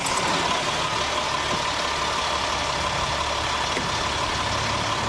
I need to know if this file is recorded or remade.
recorded